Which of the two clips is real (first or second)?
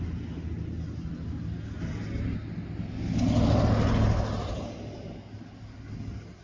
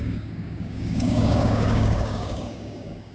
first